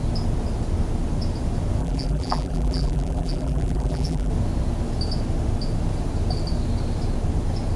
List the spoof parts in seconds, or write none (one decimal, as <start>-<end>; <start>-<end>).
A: 1.8-4.3